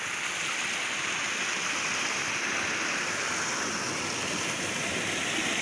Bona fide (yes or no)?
yes